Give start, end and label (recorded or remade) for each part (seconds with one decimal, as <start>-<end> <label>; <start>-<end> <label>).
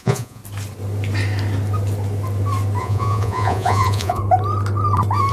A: 0.0-0.4 remade; 0.4-2.8 recorded; 2.8-4.2 remade; 4.2-5.3 recorded